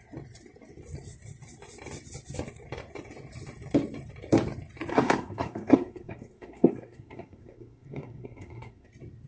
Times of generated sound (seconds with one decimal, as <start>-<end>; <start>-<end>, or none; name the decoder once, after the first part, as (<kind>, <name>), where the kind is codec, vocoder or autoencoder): 4.9-8.9 (codec, SNAC)